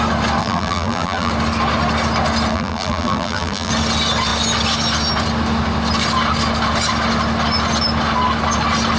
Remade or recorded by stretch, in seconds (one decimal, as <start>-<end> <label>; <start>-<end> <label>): 0.0-0.4 recorded; 0.4-1.3 remade; 1.3-2.5 recorded; 2.5-3.7 remade; 3.7-9.0 recorded